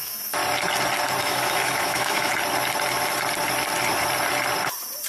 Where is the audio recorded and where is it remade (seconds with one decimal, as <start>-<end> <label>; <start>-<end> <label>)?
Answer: 0.0-0.4 remade; 0.4-1.2 recorded; 1.2-2.3 remade; 2.3-5.1 recorded